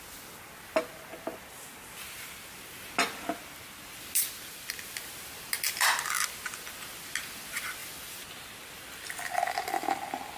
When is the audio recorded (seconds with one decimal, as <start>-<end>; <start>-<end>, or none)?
0.0-10.4